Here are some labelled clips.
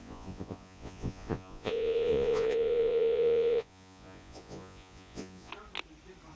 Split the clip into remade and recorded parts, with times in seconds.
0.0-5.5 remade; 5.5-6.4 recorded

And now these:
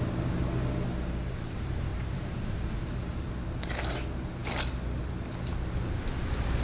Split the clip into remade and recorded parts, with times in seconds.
0.0-1.9 recorded; 1.9-3.3 remade; 3.3-6.6 recorded

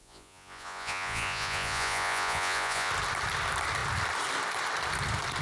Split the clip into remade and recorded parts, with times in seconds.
0.0-2.9 remade; 2.9-5.4 recorded

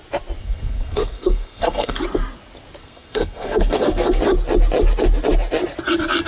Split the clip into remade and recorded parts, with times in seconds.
0.0-0.4 recorded; 0.4-2.0 remade; 2.0-2.8 recorded; 2.8-4.2 remade; 4.2-6.3 recorded

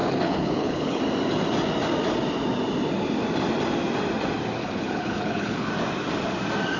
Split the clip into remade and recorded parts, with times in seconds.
0.0-1.0 remade; 1.0-4.6 recorded; 4.6-5.7 remade; 5.7-6.8 recorded